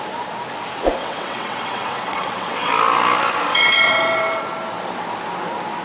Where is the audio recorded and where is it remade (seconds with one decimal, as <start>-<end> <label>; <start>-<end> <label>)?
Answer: 0.0-1.0 recorded; 1.0-2.7 remade; 2.7-3.5 recorded; 3.5-4.4 remade; 4.4-5.8 recorded

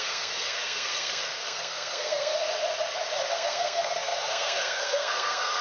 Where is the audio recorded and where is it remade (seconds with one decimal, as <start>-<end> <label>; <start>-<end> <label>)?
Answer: 0.0-2.3 remade; 2.3-3.3 recorded; 3.3-5.6 remade

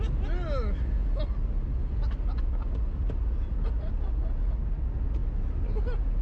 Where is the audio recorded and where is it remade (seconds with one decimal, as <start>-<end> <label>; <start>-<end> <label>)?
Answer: 0.0-6.2 recorded

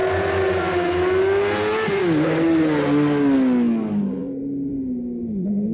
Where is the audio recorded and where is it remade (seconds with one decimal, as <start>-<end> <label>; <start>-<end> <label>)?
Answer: 0.0-5.7 recorded

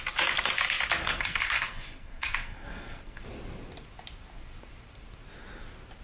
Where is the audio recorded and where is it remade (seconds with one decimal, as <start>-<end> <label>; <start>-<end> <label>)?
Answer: 0.0-1.0 recorded; 1.0-3.2 remade; 3.2-6.0 recorded